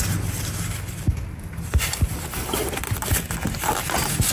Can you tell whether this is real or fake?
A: real